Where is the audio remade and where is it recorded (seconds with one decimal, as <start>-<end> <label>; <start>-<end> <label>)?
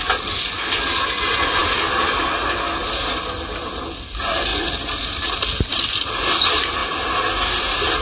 0.0-8.0 recorded